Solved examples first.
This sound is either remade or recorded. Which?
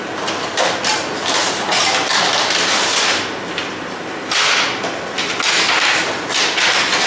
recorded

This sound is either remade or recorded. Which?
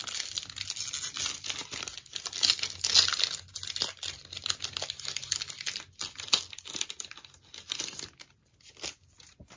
recorded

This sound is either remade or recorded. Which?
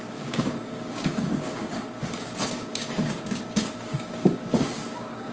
remade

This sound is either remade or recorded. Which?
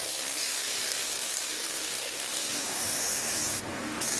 remade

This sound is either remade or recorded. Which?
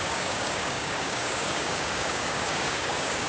remade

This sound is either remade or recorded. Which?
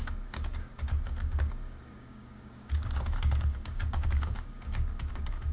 remade